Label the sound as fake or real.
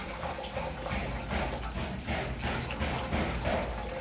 real